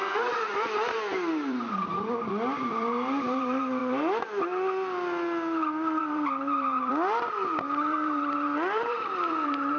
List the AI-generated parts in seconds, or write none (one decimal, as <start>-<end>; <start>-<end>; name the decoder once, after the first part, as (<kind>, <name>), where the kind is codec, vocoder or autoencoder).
0.0-3.8 (vocoder, BigVGAN v2); 6.0-9.8